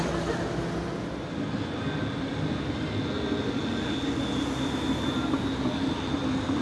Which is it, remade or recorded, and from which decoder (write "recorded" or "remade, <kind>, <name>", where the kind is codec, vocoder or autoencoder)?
recorded